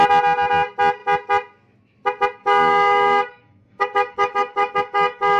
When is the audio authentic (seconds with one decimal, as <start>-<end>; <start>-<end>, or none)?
0.0-2.4